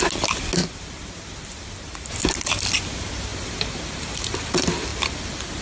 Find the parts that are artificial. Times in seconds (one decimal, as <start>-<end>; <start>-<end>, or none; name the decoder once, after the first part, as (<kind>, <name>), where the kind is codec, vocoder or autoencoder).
3.3-4.5 (vocoder, BigVGAN v2)